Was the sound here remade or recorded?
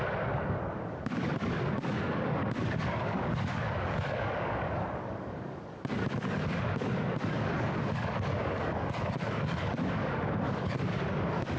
remade